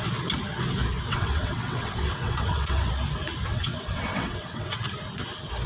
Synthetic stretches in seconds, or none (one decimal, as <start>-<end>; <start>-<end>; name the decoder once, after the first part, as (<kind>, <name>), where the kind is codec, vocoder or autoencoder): 1.1-2.9 (vocoder, WaveNeXt); 3.5-4.7